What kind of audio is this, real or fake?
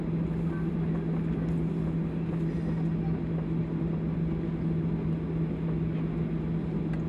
real